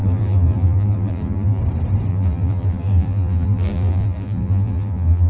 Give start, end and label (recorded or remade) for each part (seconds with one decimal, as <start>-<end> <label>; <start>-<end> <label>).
0.0-1.6 remade; 1.6-2.1 recorded; 2.1-5.3 remade